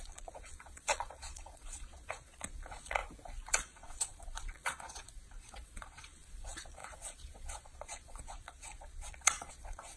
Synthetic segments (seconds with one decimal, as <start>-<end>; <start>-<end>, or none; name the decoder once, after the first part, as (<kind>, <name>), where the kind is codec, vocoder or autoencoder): 0.0-3.0 (vocoder, Vocos); 3.5-10.0